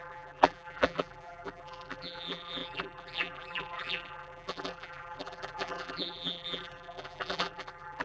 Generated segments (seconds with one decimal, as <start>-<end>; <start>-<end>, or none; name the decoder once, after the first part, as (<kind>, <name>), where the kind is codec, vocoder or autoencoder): 0.0-8.0 (vocoder, BigVGAN v2)